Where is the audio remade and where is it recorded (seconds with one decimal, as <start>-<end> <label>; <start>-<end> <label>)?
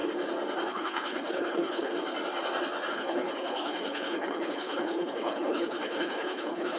0.0-0.7 recorded; 0.7-1.9 remade; 1.9-2.9 recorded; 2.9-6.8 remade